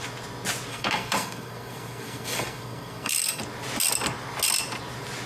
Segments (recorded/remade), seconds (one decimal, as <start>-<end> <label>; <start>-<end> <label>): 0.0-0.7 recorded; 0.7-3.4 remade; 3.4-5.3 recorded